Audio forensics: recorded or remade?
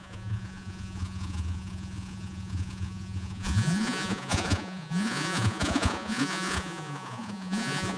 remade